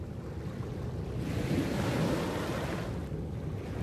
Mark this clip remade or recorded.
recorded